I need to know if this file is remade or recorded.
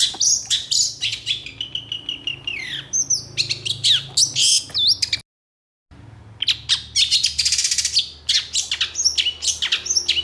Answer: recorded